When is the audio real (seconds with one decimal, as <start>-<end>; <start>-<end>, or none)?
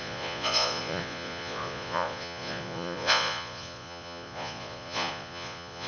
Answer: none